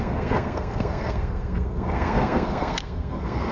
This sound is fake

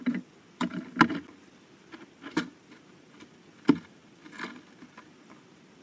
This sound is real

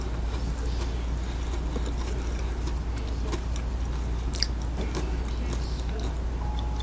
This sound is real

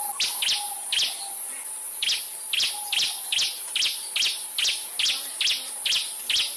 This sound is real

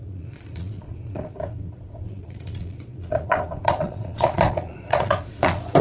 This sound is fake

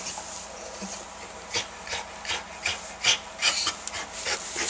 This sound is real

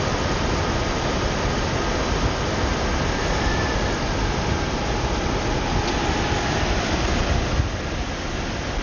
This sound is real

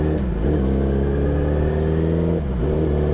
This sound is real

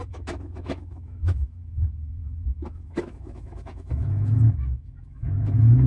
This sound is fake